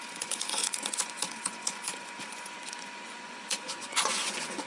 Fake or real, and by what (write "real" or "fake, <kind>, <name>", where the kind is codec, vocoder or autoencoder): fake, vocoder, Vocos